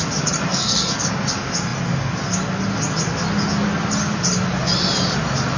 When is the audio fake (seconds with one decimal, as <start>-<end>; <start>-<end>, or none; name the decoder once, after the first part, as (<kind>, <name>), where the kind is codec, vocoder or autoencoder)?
0.5-1.1 (codec, SNAC)